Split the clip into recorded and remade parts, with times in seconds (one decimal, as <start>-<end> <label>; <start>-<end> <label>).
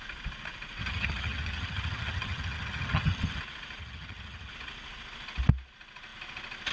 0.0-0.8 recorded; 0.8-3.4 remade; 3.4-3.8 recorded; 3.8-4.5 remade; 4.5-6.7 recorded